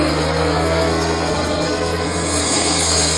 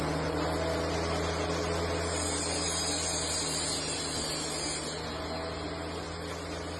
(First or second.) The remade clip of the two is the first